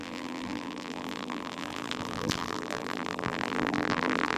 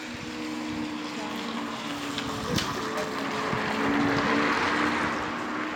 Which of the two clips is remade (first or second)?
first